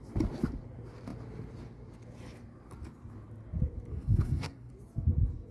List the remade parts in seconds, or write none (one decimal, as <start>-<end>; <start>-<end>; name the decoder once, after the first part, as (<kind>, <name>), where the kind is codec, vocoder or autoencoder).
3.9-4.7 (codec, SNAC)